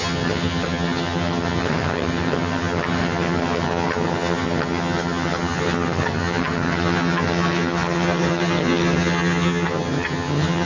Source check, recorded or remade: remade